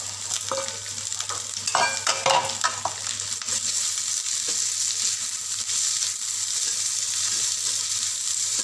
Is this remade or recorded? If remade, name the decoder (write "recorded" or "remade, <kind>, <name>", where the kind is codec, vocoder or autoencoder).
recorded